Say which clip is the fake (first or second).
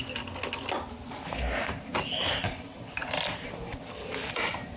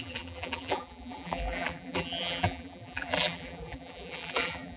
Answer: second